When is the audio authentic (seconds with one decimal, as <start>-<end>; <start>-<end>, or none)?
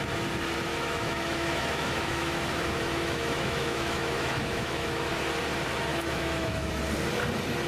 0.0-0.7; 5.3-5.9; 6.8-7.7